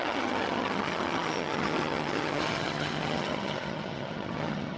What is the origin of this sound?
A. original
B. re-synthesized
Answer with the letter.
B